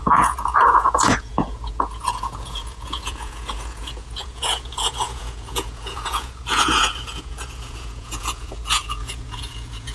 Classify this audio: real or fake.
fake